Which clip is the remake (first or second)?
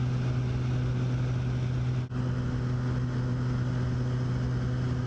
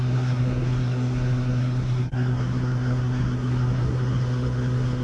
second